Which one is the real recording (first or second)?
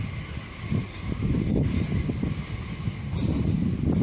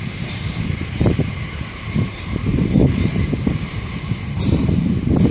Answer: first